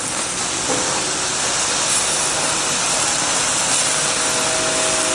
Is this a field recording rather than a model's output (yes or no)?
yes